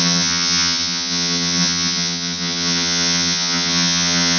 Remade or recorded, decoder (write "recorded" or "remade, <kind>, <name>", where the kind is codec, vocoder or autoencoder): remade, vocoder, HiFi-GAN